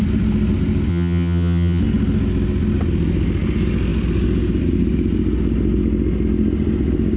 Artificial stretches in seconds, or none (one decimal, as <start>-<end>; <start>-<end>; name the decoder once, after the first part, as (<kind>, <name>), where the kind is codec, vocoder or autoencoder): 0.9-1.8 (vocoder, HiFi-GAN)